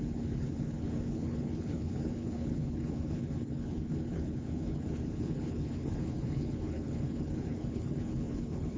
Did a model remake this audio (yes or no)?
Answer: yes